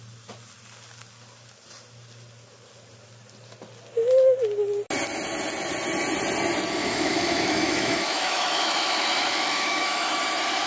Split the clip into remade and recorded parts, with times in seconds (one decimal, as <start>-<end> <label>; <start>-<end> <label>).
0.0-6.8 recorded; 6.8-10.1 remade; 10.1-10.7 recorded